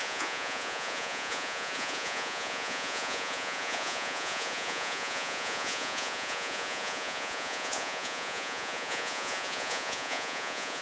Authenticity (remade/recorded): remade